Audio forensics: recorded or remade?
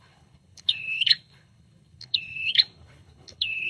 remade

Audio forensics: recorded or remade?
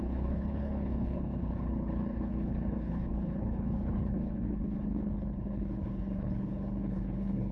remade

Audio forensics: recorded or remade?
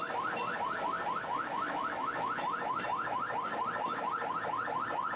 recorded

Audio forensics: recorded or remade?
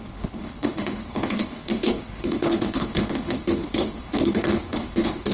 remade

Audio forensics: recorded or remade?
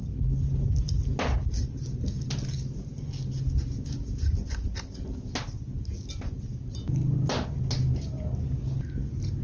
recorded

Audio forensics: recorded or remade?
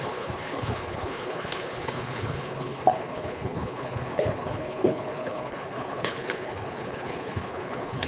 remade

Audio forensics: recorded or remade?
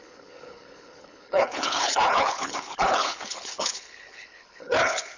remade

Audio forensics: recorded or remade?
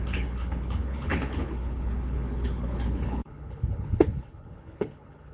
remade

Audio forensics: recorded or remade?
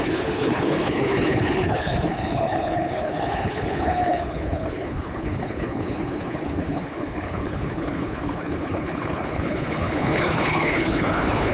remade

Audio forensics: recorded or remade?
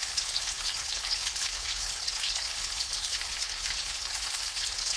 remade